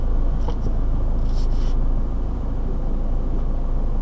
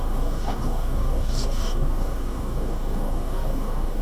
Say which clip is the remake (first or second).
second